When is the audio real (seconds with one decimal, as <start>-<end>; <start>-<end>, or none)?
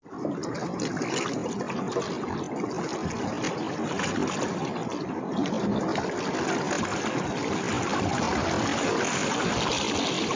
0.0-10.4